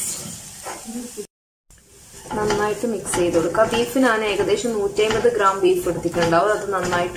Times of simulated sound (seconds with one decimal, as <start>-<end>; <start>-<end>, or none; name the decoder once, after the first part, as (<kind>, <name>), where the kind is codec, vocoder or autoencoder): 0.0-1.3 (vocoder, BigVGAN v2); 5.6-6.4